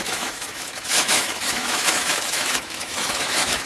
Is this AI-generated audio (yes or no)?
yes